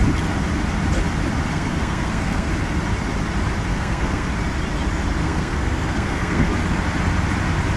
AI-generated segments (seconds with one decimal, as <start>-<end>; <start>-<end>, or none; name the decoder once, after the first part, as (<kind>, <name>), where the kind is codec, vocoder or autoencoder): 1.5-2.5 (codec, SNAC); 3.7-4.3; 5.2-6.5